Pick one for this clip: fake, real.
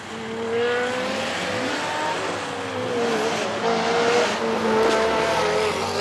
real